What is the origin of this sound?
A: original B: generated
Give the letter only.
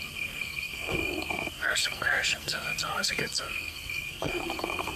B